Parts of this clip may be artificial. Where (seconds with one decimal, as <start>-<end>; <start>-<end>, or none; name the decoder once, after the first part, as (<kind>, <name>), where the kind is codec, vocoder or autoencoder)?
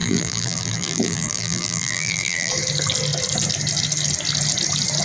0.0-2.5 (vocoder, BigVGAN v2)